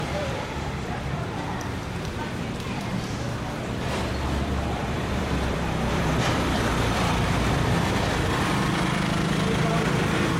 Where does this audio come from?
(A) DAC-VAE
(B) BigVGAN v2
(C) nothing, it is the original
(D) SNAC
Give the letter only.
B